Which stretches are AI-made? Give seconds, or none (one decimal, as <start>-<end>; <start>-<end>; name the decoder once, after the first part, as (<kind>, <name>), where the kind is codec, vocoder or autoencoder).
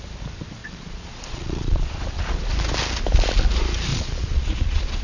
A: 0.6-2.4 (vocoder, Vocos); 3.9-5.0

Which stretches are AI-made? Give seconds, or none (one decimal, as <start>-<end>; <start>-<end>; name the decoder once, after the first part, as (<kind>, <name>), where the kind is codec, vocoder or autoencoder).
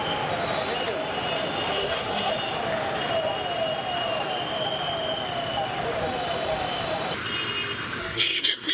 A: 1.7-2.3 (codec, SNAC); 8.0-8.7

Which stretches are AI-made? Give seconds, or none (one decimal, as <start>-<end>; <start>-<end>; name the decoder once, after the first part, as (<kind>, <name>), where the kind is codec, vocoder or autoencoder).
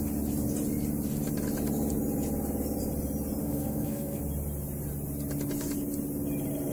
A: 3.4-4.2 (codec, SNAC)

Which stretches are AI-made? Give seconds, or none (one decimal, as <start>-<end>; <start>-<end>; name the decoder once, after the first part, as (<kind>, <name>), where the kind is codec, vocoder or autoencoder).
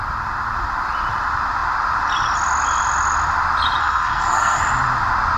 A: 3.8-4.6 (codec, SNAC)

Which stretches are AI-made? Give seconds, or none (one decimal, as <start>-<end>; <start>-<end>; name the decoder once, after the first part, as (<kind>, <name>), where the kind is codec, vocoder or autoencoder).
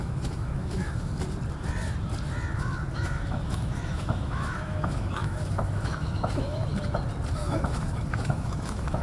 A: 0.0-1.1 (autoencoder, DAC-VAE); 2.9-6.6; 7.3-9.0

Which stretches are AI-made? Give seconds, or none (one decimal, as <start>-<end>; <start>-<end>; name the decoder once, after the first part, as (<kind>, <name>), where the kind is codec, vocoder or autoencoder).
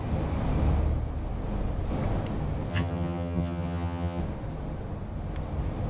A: 2.7-4.2 (vocoder, HiFi-GAN)